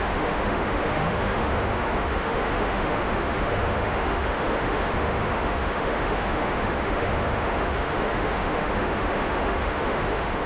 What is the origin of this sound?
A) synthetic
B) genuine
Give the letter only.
A